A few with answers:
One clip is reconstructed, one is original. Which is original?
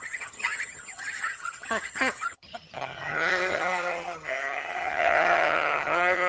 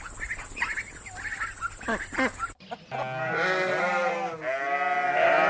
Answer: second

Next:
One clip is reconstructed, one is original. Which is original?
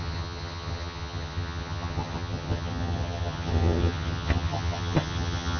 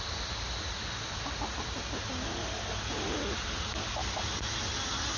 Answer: second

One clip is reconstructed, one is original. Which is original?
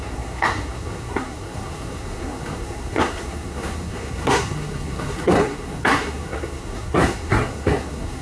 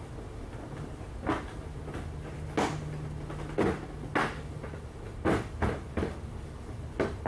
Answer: second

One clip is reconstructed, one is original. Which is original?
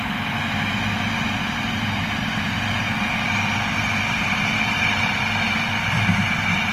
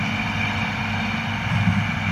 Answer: second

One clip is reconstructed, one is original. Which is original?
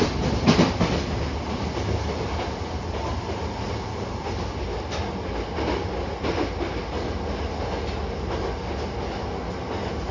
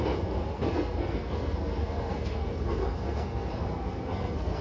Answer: first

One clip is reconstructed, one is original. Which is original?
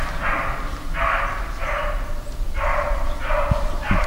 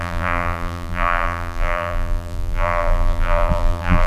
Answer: first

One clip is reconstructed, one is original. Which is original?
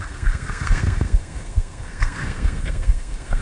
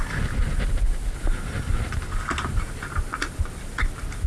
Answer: second